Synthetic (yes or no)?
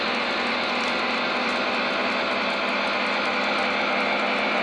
no